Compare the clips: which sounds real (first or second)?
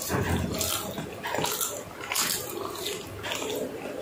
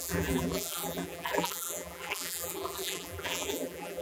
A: first